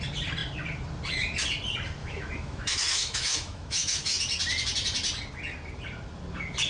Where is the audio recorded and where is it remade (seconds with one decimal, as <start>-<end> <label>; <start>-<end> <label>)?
0.0-2.0 recorded; 2.0-4.2 remade; 4.2-6.7 recorded